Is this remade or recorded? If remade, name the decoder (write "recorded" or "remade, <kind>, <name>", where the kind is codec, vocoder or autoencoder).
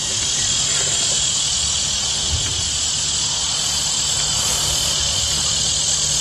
recorded